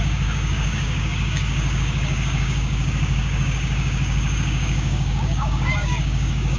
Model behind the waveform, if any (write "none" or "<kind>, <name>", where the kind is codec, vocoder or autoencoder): codec, DAC